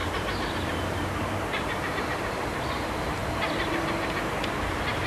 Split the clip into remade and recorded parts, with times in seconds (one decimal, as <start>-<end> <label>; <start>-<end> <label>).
0.0-5.1 remade